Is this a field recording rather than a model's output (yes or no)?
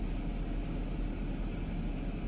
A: yes